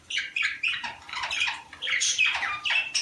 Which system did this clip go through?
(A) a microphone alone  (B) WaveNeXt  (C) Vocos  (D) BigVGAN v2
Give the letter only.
D